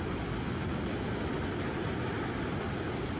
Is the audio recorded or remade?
recorded